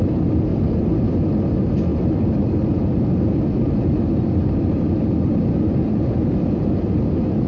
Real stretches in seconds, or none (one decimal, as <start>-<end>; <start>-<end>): 0.0-0.5; 1.1-1.9; 4.9-7.5

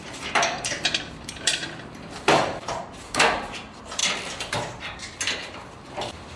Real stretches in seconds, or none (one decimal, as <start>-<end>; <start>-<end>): none